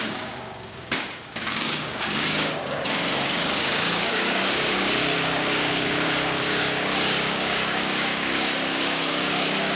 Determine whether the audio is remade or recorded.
remade